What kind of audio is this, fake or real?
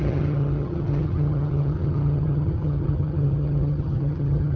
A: fake